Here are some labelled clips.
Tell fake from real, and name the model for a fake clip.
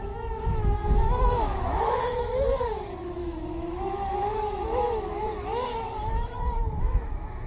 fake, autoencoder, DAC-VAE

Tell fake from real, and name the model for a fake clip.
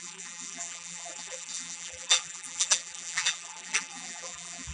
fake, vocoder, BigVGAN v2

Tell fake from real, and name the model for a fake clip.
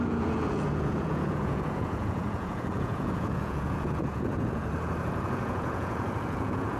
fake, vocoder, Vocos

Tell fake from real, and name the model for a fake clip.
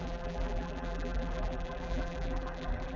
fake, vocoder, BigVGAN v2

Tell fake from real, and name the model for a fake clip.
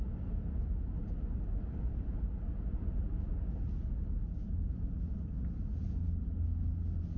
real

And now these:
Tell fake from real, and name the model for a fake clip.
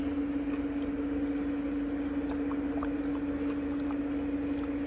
real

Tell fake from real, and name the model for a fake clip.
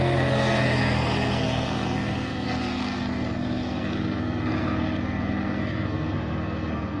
fake, codec, SNAC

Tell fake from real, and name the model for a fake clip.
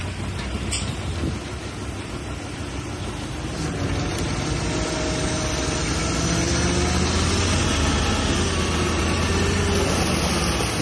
real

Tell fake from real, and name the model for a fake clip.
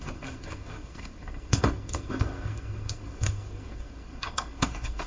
fake, codec, SNAC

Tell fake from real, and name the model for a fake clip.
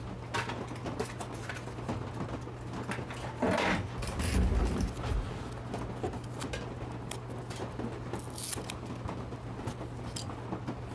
real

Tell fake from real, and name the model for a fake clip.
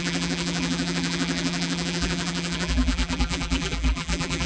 fake, vocoder, BigVGAN v2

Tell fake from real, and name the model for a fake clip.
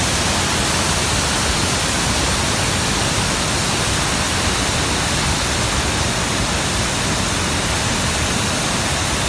real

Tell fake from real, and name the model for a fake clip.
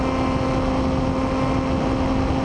real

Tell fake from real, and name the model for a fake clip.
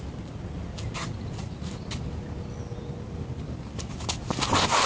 real